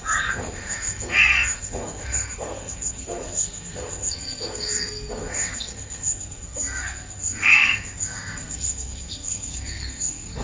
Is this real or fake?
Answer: fake